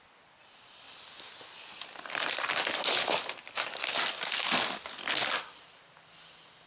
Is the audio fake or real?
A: real